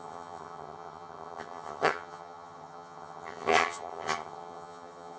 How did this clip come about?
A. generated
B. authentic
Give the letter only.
A